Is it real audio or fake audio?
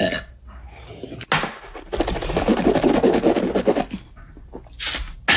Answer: real